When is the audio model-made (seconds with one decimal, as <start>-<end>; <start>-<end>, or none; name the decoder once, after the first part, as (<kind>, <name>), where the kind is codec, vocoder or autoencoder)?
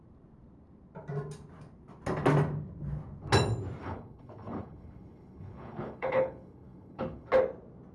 3.8-7.3 (codec, HILCodec)